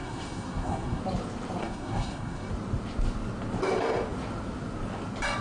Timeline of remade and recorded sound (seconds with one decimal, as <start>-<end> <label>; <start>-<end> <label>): 0.0-1.0 remade; 1.0-1.6 recorded; 1.6-2.5 remade; 2.5-5.4 recorded